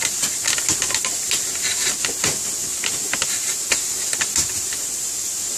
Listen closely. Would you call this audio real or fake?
real